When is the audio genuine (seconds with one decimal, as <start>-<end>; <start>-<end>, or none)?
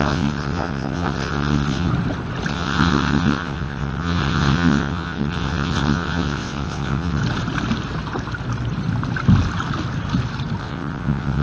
1.9-2.5; 7.2-10.6